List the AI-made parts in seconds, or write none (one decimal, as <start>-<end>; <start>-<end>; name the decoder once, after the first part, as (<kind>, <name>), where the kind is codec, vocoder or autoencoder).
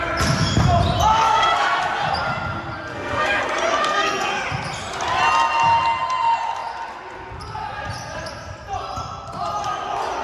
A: 1.1-1.8 (codec, SNAC); 2.9-3.4; 3.8-4.4